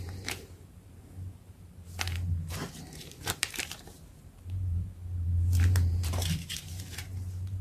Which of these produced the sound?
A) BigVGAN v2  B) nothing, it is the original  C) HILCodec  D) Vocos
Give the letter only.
A